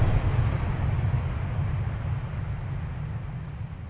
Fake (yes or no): no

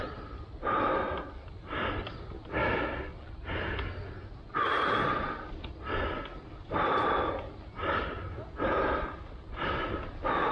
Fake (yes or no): no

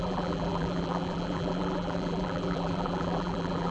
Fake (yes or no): yes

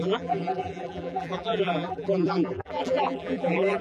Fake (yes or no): yes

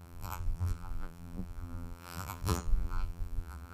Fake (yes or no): yes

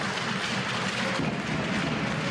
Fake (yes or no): no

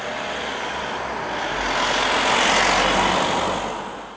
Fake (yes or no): no